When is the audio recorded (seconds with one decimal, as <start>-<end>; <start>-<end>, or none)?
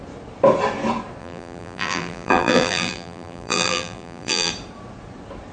0.0-1.2; 4.5-5.5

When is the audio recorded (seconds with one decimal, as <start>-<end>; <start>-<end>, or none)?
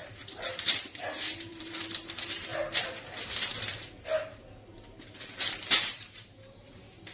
2.5-5.7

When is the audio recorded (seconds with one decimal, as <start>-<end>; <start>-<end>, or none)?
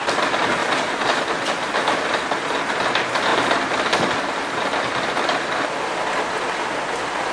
0.0-0.6; 2.6-3.3; 6.1-7.3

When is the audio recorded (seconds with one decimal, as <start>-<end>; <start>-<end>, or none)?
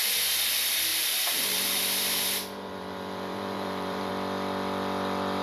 0.0-0.9; 4.1-5.4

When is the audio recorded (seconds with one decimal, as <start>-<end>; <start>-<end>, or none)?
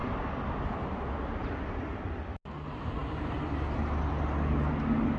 0.0-5.2